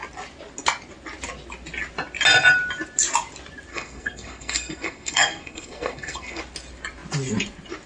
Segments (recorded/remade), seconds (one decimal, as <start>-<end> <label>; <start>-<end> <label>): 0.0-3.7 recorded; 3.7-6.4 remade; 6.4-7.9 recorded